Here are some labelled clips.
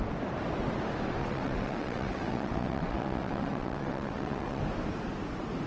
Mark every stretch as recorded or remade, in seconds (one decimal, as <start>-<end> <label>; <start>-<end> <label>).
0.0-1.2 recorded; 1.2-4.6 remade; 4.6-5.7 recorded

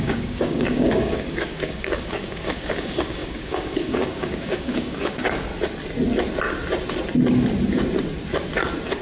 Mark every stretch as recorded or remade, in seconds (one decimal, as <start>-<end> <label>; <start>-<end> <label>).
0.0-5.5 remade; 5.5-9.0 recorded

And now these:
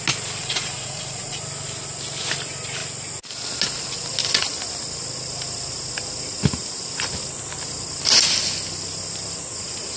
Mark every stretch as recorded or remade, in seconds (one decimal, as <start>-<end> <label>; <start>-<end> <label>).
0.0-0.4 recorded; 0.4-1.4 remade; 1.4-10.0 recorded

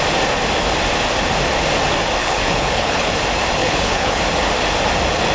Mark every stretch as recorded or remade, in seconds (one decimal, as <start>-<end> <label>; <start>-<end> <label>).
0.0-2.2 recorded; 2.2-3.1 remade; 3.1-3.6 recorded; 3.6-4.2 remade; 4.2-5.3 recorded

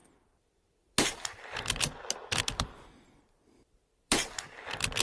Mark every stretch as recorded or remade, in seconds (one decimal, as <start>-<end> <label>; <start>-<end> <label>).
0.0-5.0 remade

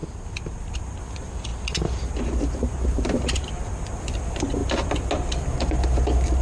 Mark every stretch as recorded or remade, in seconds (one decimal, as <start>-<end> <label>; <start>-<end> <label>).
0.0-6.4 recorded